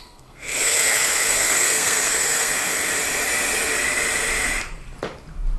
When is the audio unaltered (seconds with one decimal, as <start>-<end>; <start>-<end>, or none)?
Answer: 2.9-5.6